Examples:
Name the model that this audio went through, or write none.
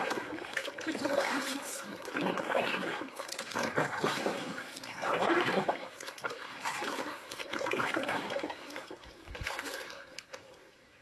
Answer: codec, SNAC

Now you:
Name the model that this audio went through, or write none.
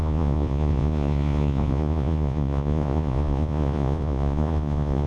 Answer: vocoder, Vocos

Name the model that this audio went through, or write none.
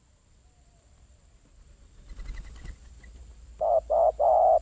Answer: vocoder, BigVGAN v2